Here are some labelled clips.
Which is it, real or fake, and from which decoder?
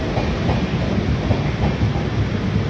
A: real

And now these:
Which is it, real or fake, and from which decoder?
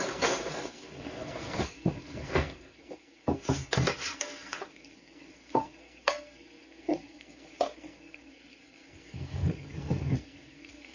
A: fake, codec, SNAC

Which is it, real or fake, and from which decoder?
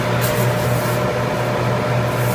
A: real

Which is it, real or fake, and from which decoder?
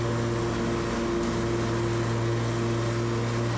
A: real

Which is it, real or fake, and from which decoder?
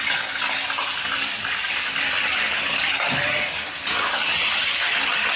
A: real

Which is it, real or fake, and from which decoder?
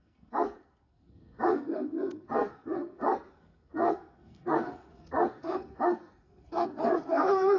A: fake, codec, SNAC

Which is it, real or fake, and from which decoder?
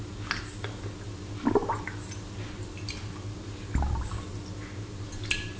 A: real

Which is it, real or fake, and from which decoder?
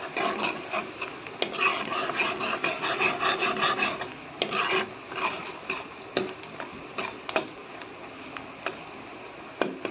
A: real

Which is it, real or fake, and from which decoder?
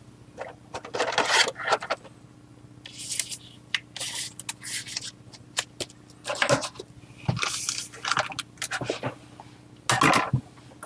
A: real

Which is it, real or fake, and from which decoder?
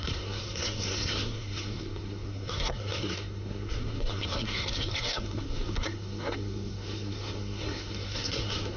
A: fake, codec, SNAC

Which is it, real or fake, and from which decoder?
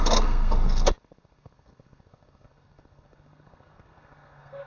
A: fake, codec, SNAC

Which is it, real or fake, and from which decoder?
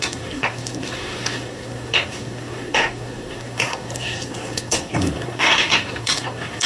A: fake, codec, SNAC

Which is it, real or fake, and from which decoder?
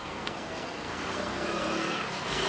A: fake, codec, SNAC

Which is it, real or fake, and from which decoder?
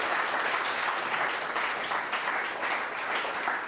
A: real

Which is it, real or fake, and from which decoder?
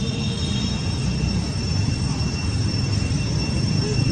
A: real